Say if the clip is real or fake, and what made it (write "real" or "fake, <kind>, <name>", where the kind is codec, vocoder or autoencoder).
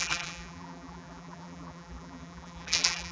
fake, vocoder, BigVGAN v2